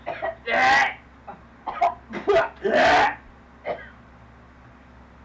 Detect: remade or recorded recorded